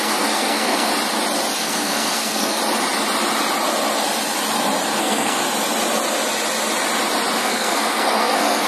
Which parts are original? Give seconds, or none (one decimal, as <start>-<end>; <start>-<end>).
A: 0.9-1.6; 2.6-5.0; 5.4-7.4